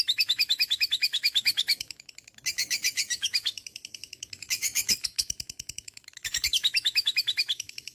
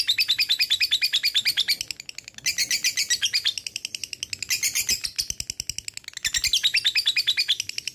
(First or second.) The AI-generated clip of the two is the first